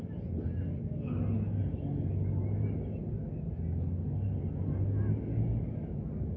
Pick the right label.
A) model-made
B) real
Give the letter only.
B